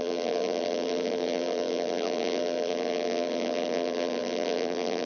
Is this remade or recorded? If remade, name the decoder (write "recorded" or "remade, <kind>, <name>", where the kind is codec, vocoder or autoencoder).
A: remade, vocoder, BigVGAN v2